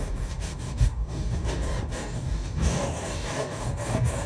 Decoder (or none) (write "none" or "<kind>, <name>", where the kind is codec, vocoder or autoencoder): codec, DAC